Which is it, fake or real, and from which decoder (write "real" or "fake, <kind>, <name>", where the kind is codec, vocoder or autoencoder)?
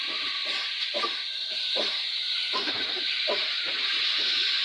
fake, vocoder, BigVGAN v2